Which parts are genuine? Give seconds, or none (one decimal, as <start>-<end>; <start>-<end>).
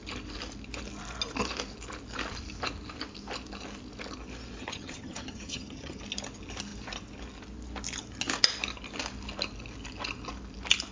0.0-4.6; 6.0-10.9